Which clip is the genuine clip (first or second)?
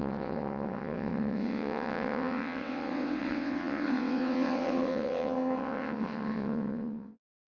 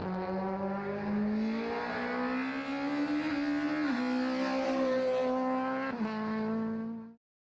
second